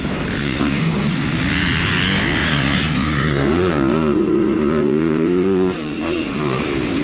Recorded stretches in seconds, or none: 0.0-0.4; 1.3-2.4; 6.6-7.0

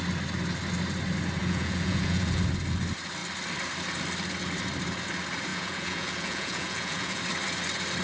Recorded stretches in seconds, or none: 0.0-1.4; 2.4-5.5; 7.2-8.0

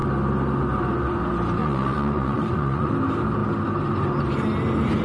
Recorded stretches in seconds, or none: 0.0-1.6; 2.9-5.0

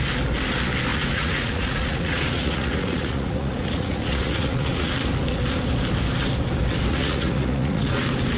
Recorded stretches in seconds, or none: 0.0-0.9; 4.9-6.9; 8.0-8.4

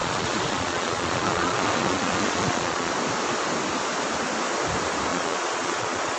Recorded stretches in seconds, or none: 2.9-5.1